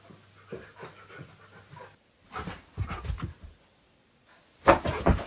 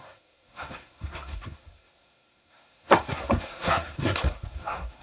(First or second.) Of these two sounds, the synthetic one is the second